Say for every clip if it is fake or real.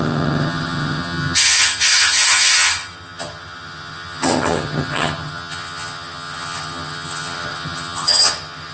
fake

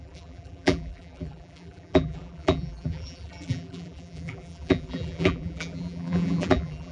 fake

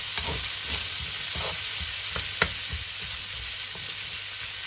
real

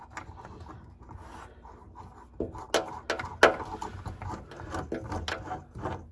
real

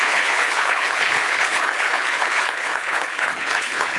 fake